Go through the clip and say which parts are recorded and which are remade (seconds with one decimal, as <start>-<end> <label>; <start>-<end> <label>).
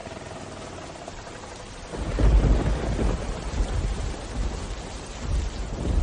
0.0-6.0 recorded